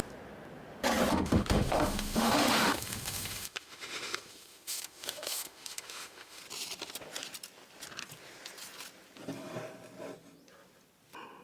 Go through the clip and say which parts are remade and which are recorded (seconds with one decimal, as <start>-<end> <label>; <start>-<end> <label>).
0.0-1.1 recorded; 1.1-6.4 remade; 6.4-11.4 recorded